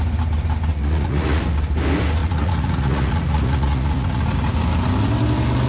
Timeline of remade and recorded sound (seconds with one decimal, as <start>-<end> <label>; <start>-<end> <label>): 0.0-0.7 recorded; 0.7-1.4 remade; 1.4-2.2 recorded; 2.2-4.2 remade; 4.2-5.7 recorded